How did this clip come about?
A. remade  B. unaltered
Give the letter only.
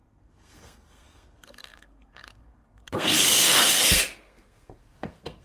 A